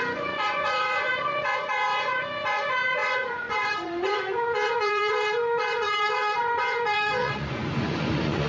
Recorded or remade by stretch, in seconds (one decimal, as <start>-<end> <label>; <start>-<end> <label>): 0.0-8.5 remade